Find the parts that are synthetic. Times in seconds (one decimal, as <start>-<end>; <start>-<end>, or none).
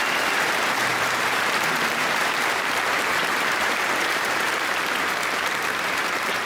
0.0-6.5